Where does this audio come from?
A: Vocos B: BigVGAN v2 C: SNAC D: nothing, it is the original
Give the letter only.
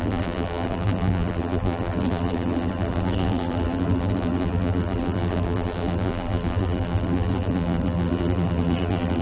B